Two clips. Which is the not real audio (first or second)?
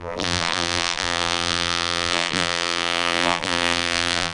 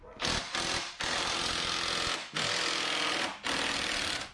first